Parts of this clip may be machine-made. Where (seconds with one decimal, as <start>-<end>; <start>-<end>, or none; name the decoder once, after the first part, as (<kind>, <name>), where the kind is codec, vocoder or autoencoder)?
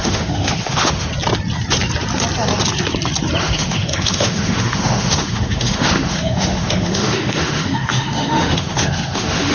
0.0-1.1 (autoencoder, DAC-VAE); 3.4-9.5